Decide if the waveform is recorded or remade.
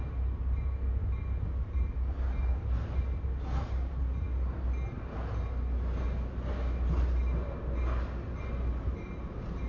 recorded